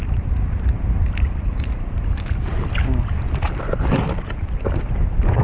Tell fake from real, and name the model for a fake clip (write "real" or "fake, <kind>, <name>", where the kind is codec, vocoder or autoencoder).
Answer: real